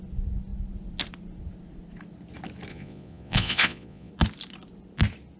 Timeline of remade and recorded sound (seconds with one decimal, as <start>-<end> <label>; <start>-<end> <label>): 0.0-2.7 recorded; 2.7-4.1 remade; 4.1-5.4 recorded